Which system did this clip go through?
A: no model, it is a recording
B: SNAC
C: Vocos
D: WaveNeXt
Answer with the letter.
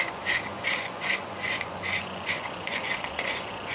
C